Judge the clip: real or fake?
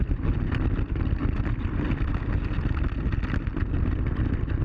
real